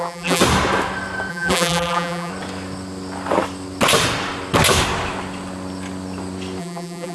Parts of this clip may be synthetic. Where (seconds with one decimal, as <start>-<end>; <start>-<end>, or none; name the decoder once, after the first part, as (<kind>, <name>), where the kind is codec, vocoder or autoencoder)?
0.0-0.4 (vocoder, BigVGAN v2); 1.3-2.3; 6.6-7.1